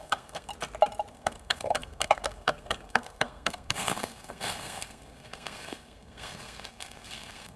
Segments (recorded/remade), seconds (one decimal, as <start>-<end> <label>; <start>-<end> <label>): 0.0-0.5 remade; 0.5-1.1 recorded; 1.1-7.6 remade